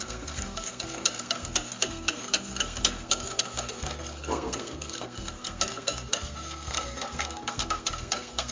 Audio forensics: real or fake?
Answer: fake